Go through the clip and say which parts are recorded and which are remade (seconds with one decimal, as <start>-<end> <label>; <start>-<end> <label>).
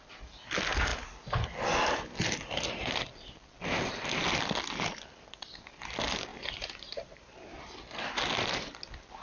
0.0-6.3 recorded; 6.3-7.7 remade; 7.7-9.2 recorded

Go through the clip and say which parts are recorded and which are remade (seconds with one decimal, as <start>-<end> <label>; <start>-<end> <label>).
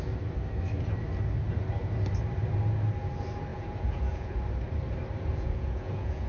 0.0-3.5 recorded; 3.5-4.4 remade; 4.4-5.3 recorded; 5.3-6.3 remade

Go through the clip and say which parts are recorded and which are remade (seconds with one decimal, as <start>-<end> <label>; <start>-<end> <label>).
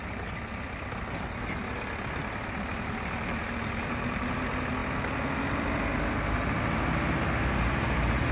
0.0-8.3 recorded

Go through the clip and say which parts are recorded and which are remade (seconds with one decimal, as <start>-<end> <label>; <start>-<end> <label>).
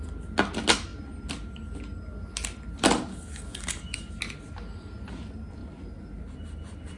0.0-3.1 recorded; 3.1-4.2 remade; 4.2-7.0 recorded